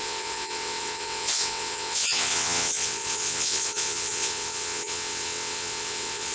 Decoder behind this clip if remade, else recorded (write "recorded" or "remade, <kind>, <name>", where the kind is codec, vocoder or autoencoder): remade, vocoder, WaveNeXt